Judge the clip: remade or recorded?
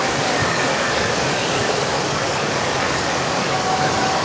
remade